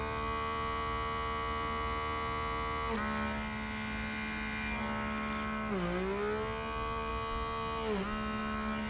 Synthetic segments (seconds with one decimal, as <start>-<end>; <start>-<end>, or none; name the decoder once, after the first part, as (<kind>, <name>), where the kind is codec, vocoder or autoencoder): none